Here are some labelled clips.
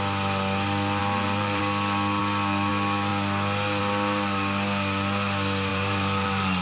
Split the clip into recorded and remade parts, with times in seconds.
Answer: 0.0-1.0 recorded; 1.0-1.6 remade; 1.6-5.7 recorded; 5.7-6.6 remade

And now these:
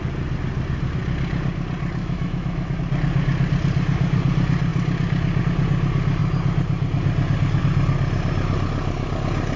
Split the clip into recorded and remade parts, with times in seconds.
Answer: 0.0-2.0 recorded; 2.0-2.8 remade; 2.8-9.6 recorded